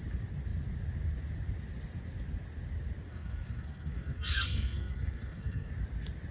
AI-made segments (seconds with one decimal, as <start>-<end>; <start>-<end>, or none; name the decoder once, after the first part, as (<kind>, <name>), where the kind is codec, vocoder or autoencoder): 3.1-5.7 (codec, SNAC)